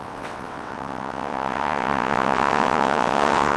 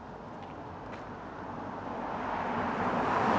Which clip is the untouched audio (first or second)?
second